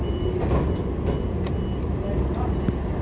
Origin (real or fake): real